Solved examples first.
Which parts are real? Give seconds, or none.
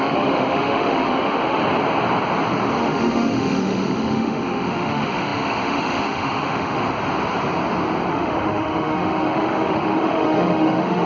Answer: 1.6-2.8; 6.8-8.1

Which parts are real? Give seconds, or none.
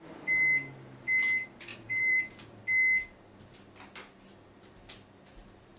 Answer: 0.0-1.7; 2.6-5.8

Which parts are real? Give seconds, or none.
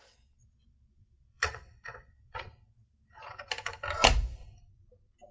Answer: 3.2-5.3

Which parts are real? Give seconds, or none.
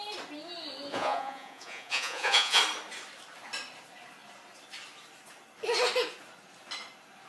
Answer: 0.0-0.9; 2.6-7.3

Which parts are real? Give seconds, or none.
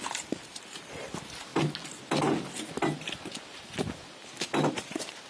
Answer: 1.5-4.7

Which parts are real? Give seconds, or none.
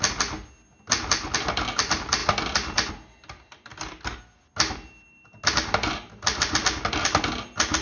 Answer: 0.0-7.8